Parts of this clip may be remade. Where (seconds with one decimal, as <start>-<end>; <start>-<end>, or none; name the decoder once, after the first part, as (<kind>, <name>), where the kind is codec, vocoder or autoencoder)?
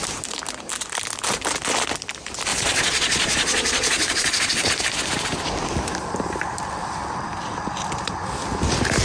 2.5-4.7 (vocoder, Vocos)